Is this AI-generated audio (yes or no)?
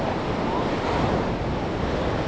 no